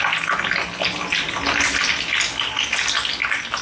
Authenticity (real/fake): real